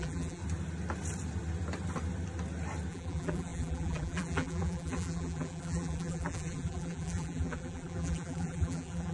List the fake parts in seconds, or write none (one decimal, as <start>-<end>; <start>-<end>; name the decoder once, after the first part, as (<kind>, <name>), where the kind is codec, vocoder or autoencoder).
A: 0.0-0.4 (vocoder, BigVGAN v2); 2.9-9.1